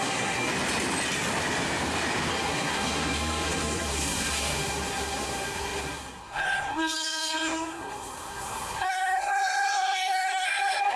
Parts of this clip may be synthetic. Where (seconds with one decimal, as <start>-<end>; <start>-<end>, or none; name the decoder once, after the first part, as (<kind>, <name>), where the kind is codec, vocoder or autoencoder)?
0.0-0.5 (codec, SNAC); 2.3-11.0